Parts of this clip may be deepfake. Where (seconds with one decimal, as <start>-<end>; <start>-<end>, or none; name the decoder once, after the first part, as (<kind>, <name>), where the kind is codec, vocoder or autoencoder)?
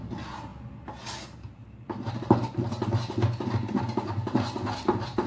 none